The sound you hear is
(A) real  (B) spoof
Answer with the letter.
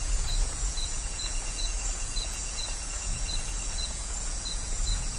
B